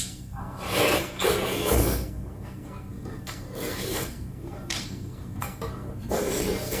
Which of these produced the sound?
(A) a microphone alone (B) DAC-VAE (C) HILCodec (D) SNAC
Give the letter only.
D